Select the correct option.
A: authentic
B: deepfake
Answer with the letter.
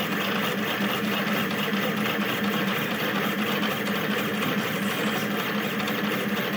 A